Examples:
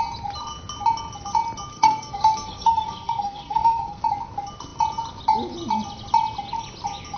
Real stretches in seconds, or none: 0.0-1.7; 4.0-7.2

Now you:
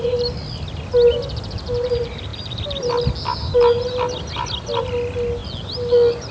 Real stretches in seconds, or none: 0.0-6.3

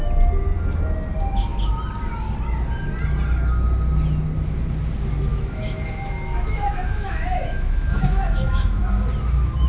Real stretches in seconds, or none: 0.0-5.3; 8.8-9.7

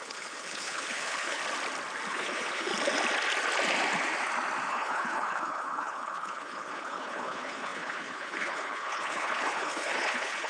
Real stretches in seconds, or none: 1.4-2.1; 2.7-4.7

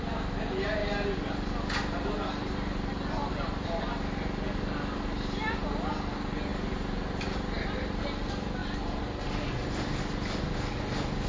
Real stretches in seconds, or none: 0.0-11.3

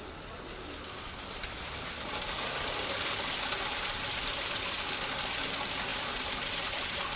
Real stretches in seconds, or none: 0.0-7.2

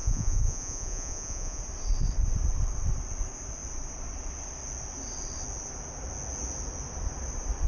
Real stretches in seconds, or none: 1.6-7.7

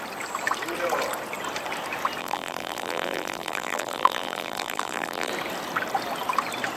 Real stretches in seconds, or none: 0.0-2.2; 5.3-6.8